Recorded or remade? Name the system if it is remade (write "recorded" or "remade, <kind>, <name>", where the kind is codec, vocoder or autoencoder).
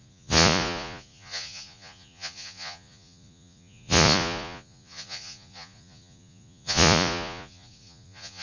remade, vocoder, Vocos